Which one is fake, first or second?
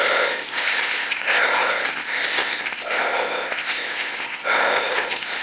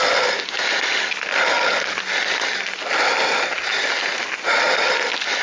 first